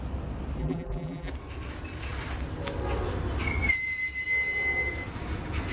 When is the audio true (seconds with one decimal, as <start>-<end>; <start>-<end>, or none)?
0.0-0.6; 1.3-5.7